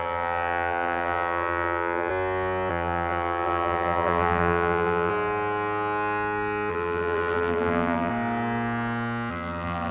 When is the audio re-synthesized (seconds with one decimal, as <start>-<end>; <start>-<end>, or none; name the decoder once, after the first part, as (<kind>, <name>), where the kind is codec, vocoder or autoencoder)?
0.0-2.1 (vocoder, BigVGAN v2); 2.7-5.1; 6.7-8.1; 9.3-9.9